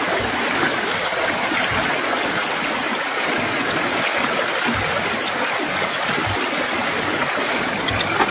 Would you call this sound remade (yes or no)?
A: no